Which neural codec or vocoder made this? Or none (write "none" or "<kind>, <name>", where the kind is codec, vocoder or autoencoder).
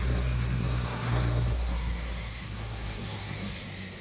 codec, SNAC